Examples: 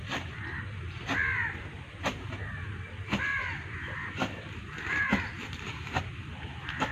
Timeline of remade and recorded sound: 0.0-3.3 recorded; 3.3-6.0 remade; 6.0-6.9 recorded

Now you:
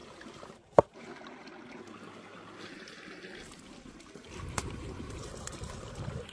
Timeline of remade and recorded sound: 0.0-3.8 recorded; 3.8-6.3 remade

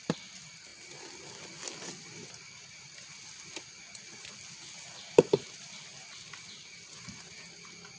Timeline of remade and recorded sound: 0.0-8.0 recorded

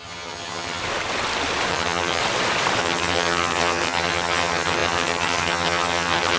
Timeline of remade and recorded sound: 0.0-0.8 remade; 0.8-1.7 recorded; 1.7-2.2 remade; 2.2-2.8 recorded; 2.8-6.4 remade

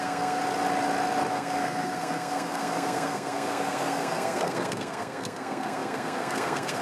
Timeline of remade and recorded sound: 0.0-0.4 remade; 0.4-1.3 recorded; 1.3-6.8 remade

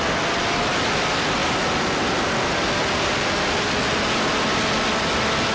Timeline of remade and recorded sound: 0.0-5.5 recorded

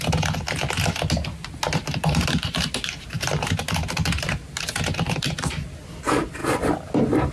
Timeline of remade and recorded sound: 0.0-1.8 recorded; 1.8-4.7 remade; 4.7-6.4 recorded; 6.4-7.3 remade